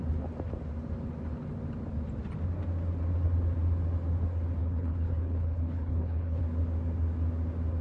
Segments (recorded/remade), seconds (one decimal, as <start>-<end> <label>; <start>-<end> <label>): 0.0-4.6 recorded; 4.6-6.4 remade; 6.4-7.8 recorded

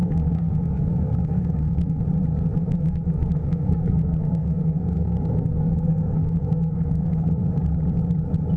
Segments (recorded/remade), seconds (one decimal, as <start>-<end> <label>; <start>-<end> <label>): 0.0-2.0 remade; 2.0-2.6 recorded; 2.6-7.4 remade; 7.4-8.6 recorded

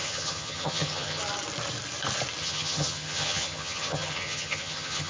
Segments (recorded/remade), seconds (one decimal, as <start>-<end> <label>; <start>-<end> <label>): 0.0-1.2 remade; 1.2-2.4 recorded; 2.4-5.1 remade

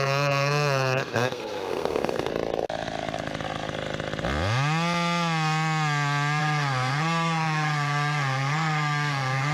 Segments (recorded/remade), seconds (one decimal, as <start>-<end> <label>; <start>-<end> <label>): 0.0-2.3 remade; 2.3-6.4 recorded; 6.4-9.5 remade